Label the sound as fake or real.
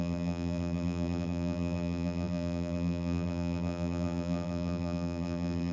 fake